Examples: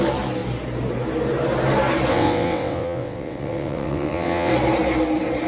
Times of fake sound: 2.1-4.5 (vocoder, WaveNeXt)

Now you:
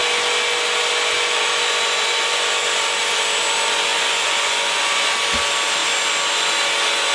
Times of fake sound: 3.9-5.1 (vocoder, Vocos)